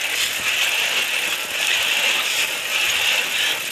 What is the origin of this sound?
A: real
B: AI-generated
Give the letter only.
A